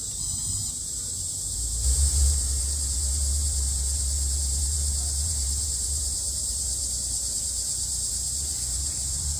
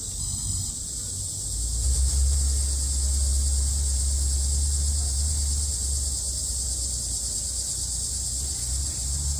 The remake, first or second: first